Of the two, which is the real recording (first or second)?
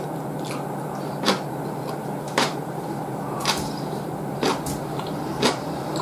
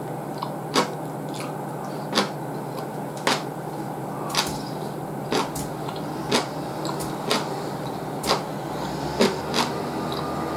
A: second